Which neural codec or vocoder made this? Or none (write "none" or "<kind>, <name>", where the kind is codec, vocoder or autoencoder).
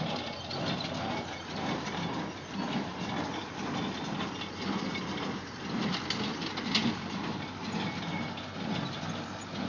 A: none